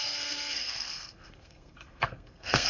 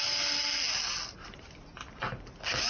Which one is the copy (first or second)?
first